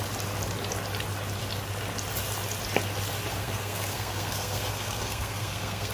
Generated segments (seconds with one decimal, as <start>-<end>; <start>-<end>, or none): 3.3-5.9